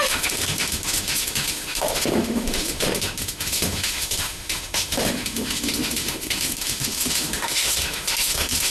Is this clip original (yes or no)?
no